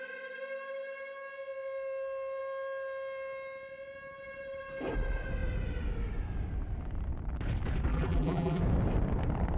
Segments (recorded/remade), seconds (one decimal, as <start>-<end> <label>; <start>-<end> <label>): 0.0-7.9 recorded; 7.9-8.6 remade; 8.6-9.6 recorded